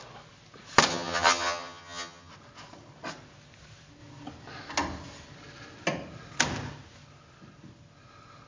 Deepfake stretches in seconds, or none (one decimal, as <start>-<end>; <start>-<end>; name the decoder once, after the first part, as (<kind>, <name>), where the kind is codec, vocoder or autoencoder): 0.9-2.3 (vocoder, HiFi-GAN)